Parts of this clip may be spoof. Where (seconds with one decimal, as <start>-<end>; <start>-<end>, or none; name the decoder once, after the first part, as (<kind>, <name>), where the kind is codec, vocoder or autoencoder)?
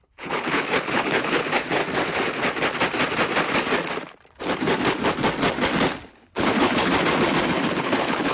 0.0-1.8 (codec, HILCodec); 6.1-6.9; 7.5-8.3